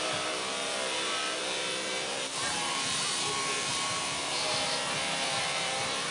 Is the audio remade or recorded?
remade